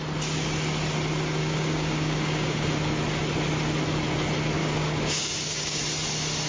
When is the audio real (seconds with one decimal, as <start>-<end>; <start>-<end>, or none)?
0.0-1.4; 2.6-4.6; 5.8-6.5

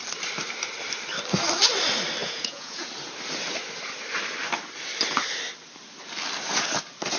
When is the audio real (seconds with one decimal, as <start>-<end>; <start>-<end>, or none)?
0.0-2.2; 2.9-7.2